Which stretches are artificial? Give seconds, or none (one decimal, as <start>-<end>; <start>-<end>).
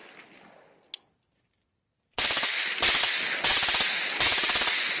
none